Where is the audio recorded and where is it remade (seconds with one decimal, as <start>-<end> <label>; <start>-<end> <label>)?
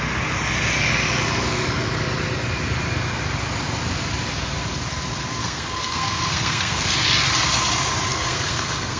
0.0-5.4 recorded; 5.4-6.9 remade; 6.9-8.1 recorded; 8.1-9.0 remade